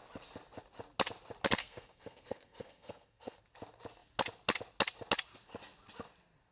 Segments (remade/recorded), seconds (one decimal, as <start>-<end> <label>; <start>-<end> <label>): 0.0-1.6 recorded; 1.6-3.4 remade; 3.4-6.5 recorded